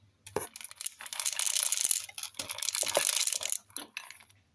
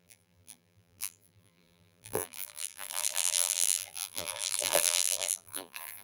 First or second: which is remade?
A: second